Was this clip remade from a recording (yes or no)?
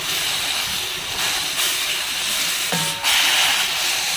no